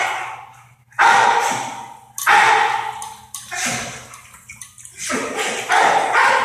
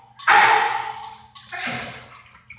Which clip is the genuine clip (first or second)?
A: first